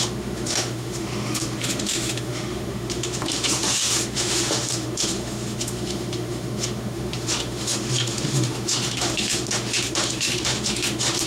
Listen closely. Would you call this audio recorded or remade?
remade